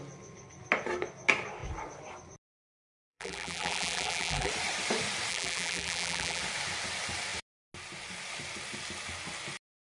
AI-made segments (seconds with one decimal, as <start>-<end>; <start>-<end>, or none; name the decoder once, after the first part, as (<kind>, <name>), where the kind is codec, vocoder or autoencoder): 3.1-4.5 (vocoder, BigVGAN v2); 5.3-6.4